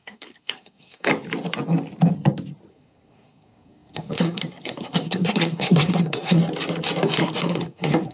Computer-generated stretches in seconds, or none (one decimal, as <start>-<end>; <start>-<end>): 0.0-1.1; 2.7-6.4; 7.2-8.1